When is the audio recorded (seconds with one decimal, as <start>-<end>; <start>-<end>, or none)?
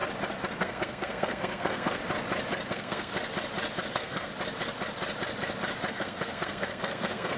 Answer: 0.0-0.6; 2.0-2.7; 3.1-3.9; 4.3-5.9